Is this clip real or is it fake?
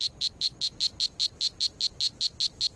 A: real